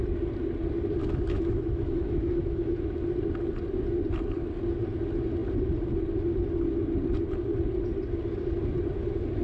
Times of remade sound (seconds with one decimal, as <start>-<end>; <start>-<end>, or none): 1.0-2.7